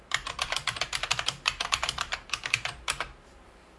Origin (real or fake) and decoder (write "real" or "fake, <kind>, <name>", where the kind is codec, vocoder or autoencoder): fake, vocoder, BigVGAN v2